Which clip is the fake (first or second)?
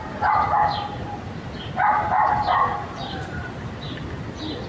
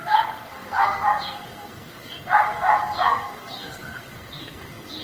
second